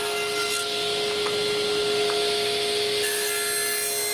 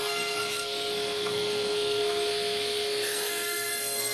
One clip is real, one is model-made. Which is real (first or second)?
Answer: first